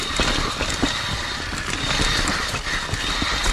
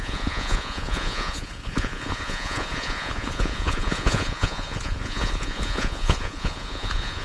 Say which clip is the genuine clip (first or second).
first